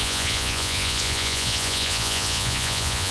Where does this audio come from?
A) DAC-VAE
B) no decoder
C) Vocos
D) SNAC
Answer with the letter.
C